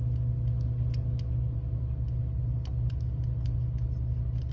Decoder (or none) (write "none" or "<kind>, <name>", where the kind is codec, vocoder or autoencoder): none